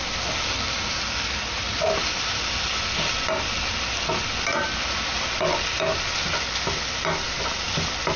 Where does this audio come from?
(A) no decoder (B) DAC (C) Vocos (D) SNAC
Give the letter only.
A